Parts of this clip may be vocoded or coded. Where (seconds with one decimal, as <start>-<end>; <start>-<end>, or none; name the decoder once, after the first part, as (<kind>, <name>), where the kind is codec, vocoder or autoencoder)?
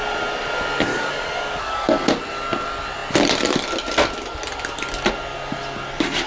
0.9-2.1 (codec, DAC)